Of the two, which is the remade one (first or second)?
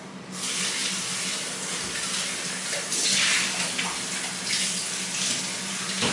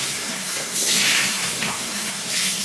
second